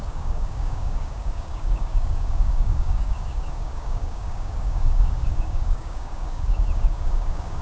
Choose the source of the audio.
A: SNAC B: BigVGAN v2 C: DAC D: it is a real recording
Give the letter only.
C